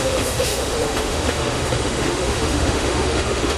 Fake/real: fake